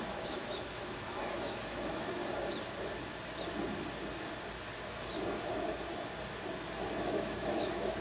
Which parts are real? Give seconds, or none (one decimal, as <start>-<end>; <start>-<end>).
2.2-7.0